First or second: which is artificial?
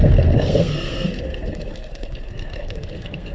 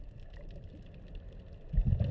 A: first